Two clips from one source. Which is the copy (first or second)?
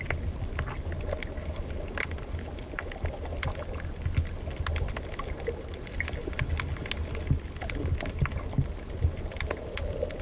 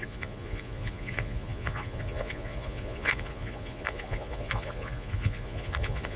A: second